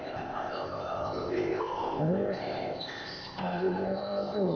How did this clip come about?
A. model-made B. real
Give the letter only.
A